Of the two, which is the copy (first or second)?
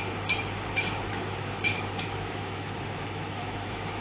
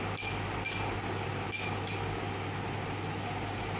first